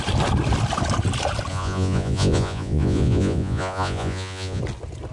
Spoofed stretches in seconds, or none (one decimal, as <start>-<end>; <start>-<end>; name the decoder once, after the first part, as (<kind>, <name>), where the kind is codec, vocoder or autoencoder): 1.5-4.6 (vocoder, Vocos)